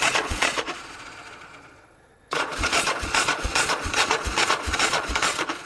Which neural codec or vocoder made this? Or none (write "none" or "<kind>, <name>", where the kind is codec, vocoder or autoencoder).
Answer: vocoder, Vocos